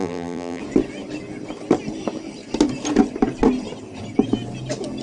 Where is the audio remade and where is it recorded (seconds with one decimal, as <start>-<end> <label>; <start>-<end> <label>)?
0.0-0.6 remade; 0.6-5.0 recorded